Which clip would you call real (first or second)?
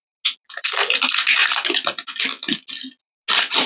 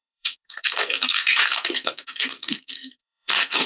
first